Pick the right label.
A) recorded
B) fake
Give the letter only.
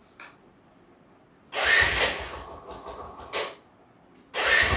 A